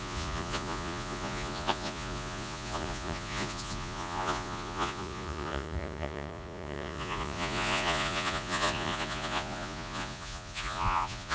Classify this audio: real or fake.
fake